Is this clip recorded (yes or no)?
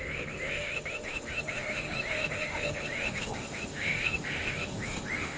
no